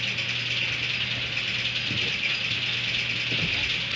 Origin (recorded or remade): recorded